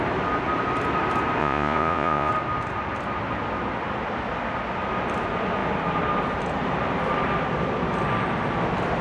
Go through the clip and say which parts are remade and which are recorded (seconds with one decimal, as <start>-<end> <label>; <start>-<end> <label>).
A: 0.0-1.4 recorded; 1.4-2.3 remade; 2.3-9.0 recorded